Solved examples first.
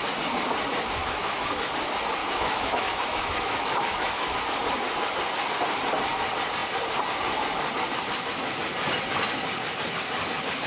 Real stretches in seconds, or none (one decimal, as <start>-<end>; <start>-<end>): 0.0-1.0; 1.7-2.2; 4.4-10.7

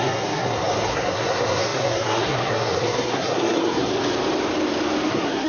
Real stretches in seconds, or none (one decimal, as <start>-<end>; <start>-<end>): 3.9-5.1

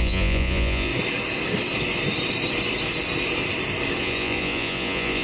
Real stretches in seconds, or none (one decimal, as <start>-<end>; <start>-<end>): 0.9-4.0

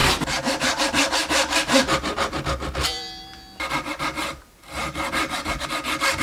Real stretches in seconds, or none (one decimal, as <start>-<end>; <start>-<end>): 0.0-6.2

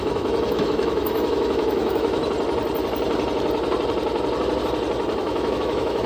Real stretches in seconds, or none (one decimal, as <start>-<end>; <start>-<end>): 2.2-5.2